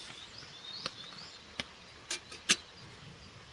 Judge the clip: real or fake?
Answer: real